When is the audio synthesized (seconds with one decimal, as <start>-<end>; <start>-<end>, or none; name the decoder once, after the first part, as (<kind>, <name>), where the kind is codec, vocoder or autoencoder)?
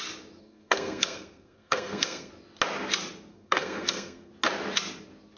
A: 0.4-2.3 (codec, SNAC); 3.3-4.3